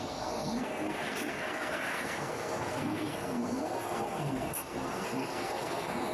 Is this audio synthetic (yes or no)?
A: yes